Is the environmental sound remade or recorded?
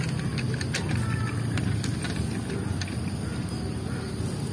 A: recorded